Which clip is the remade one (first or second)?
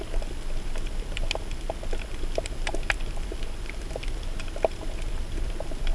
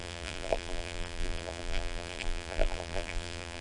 second